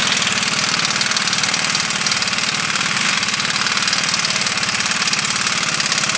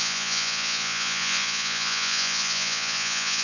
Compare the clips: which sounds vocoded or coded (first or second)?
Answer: second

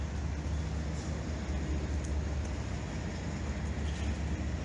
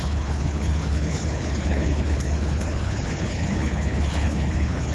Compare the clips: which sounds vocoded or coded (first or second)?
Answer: second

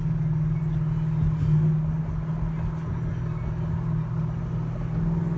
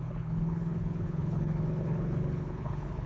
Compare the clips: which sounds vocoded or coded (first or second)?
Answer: second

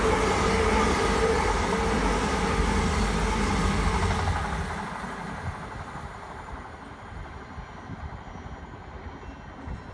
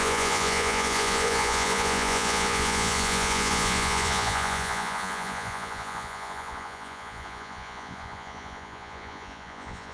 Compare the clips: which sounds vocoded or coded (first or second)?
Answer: second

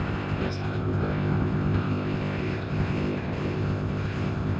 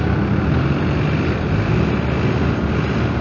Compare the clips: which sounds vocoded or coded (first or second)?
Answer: first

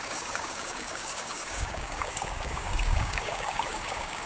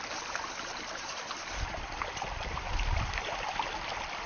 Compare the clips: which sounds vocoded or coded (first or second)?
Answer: first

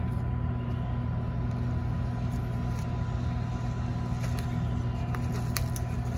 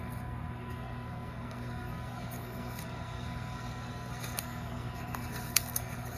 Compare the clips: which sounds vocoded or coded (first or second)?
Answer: second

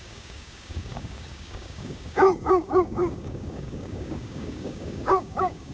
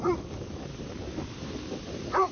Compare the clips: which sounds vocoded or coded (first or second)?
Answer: first